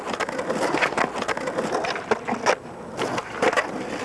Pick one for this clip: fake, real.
real